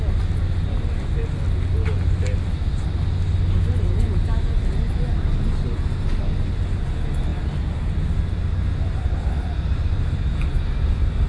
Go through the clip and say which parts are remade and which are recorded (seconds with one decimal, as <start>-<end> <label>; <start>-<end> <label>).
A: 0.0-11.3 recorded